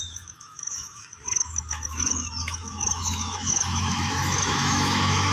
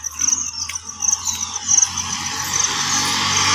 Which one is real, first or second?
second